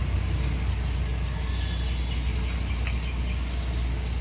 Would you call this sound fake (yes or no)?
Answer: no